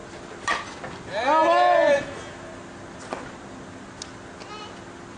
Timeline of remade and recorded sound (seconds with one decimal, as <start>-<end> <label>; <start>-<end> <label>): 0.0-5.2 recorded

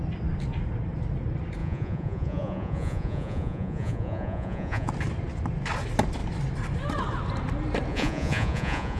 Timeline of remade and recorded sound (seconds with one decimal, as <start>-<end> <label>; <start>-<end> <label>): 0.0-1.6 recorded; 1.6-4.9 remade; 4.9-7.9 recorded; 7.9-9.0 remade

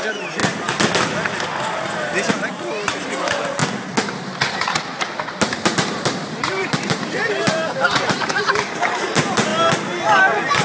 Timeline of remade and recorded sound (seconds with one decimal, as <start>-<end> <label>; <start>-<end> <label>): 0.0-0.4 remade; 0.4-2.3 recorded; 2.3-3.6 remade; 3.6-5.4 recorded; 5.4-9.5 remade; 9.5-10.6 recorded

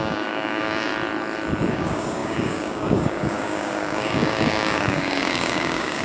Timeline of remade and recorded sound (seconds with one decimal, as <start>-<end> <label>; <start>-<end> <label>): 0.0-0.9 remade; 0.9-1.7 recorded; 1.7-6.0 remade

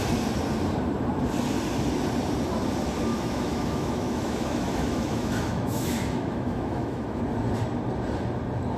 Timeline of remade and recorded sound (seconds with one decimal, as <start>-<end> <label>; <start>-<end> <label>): 0.0-3.1 recorded; 3.1-7.2 remade; 7.2-8.8 recorded

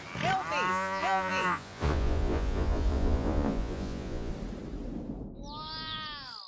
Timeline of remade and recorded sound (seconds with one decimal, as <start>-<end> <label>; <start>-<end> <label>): 0.0-0.7 recorded; 0.7-4.3 remade; 4.3-6.5 recorded